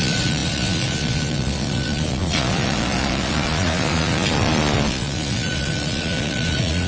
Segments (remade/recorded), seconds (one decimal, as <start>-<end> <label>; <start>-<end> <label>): 0.0-6.9 remade